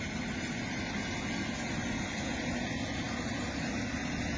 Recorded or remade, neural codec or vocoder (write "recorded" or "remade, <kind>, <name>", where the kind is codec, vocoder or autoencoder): recorded